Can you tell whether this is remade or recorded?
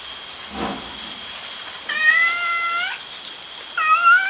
recorded